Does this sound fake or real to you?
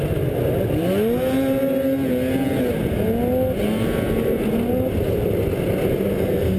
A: real